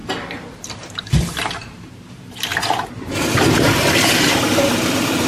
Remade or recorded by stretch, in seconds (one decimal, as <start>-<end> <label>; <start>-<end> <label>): 0.0-5.3 remade